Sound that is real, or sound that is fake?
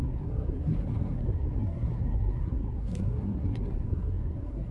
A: fake